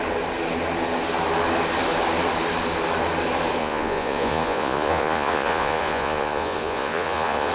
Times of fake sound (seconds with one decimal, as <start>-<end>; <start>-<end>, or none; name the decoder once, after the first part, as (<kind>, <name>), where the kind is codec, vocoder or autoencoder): 3.6-7.5 (vocoder, Vocos)